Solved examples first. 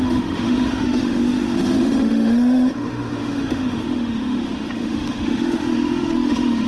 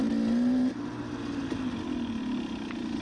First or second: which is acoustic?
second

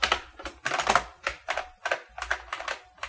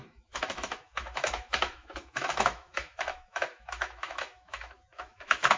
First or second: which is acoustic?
first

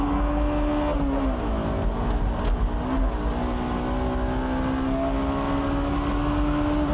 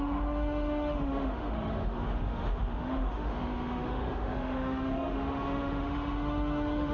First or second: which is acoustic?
first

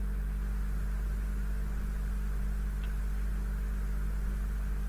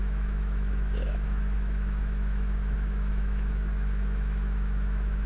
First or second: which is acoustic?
first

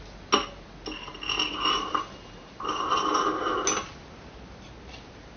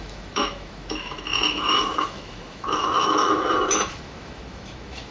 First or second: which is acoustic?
first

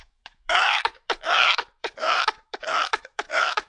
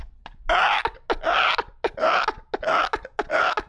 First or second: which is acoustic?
second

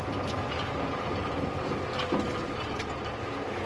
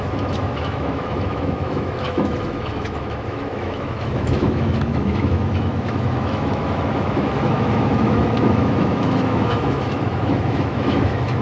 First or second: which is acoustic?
first